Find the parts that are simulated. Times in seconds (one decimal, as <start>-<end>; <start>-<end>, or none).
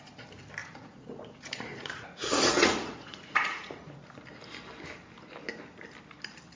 0.6-3.9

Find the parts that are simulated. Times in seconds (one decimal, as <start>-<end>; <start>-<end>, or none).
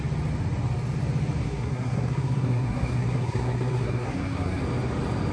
1.4-4.6